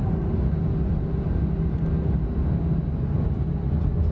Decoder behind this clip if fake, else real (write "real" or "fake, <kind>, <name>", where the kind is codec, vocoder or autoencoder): real